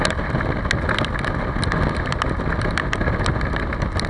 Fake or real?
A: real